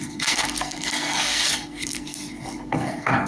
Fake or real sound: fake